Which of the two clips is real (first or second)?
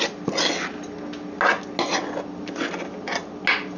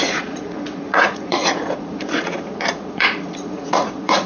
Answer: first